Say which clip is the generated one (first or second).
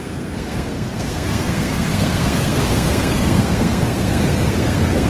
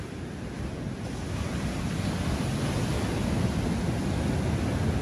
first